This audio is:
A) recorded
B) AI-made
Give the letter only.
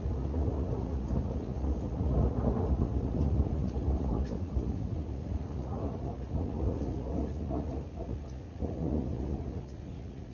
B